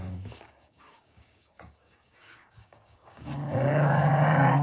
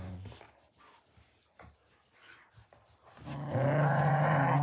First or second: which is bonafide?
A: second